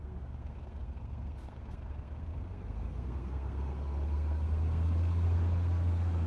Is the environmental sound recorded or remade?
remade